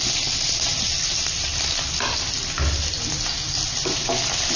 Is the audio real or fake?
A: real